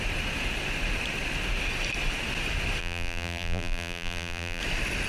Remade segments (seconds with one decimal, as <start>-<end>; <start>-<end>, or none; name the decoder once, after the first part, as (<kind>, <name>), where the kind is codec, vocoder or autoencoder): 2.8-4.6 (vocoder, BigVGAN v2)